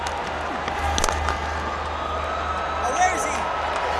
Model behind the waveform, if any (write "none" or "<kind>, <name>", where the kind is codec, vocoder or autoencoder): none